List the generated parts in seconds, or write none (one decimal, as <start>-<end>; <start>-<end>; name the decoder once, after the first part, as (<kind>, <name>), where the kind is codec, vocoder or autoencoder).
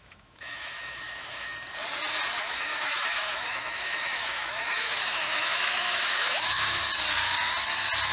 0.0-1.5 (autoencoder, DAC-VAE); 2.4-6.8